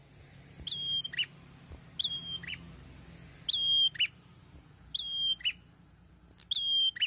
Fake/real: real